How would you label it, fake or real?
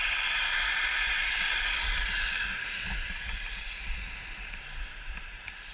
fake